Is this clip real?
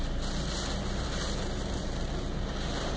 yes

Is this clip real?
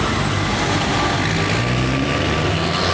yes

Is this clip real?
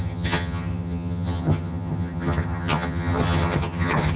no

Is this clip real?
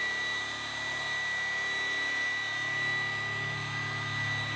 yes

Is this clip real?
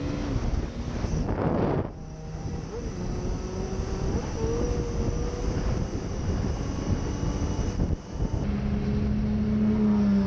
yes